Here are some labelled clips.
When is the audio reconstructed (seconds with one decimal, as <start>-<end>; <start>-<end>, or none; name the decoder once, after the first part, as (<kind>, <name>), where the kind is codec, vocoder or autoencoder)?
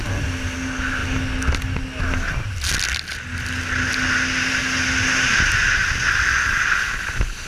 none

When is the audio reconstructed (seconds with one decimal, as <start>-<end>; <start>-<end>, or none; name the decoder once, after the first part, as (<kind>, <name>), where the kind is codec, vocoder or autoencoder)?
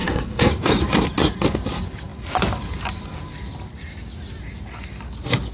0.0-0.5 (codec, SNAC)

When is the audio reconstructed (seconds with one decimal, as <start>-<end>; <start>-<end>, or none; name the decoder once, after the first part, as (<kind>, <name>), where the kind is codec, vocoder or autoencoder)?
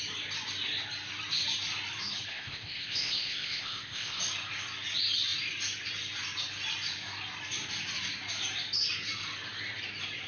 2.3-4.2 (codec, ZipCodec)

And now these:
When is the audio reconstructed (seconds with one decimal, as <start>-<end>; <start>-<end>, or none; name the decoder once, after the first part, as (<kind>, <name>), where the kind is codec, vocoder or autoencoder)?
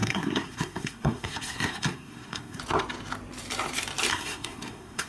0.0-2.6 (codec, SNAC); 4.1-5.1